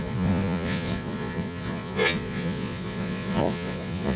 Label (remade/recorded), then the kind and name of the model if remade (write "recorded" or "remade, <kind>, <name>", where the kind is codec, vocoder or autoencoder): remade, vocoder, Vocos